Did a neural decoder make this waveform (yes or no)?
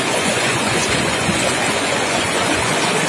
yes